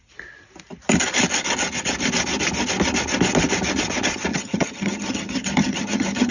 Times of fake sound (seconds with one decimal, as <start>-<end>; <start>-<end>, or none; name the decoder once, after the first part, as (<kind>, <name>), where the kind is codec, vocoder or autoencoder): 4.3-6.3 (vocoder, HiFi-GAN)